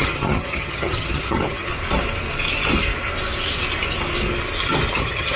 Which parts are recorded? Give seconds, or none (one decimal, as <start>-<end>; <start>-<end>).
1.7-4.9